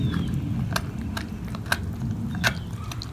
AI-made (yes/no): no